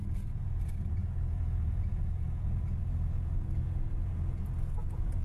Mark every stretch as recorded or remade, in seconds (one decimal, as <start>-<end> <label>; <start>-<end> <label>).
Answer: 0.0-5.2 remade